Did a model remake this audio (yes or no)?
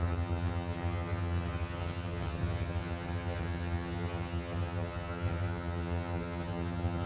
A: yes